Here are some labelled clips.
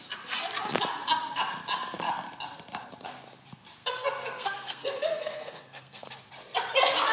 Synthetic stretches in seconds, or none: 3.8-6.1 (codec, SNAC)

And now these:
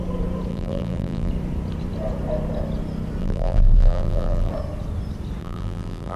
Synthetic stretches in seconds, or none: 0.5-1.3 (vocoder, BigVGAN v2); 3.2-4.5; 5.4-6.2

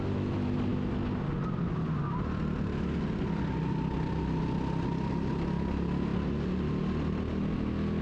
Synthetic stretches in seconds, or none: none

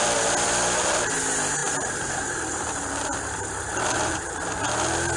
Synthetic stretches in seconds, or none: 1.6-4.2 (vocoder, BigVGAN v2)

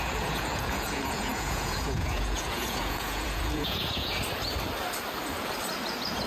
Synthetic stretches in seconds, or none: 0.0-4.1 (vocoder, Vocos)

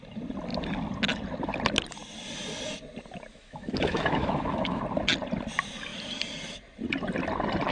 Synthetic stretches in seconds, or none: 3.3-4.8 (autoencoder, DAC-VAE)

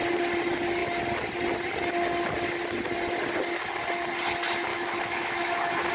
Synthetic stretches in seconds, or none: 4.7-5.9 (autoencoder, DAC-VAE)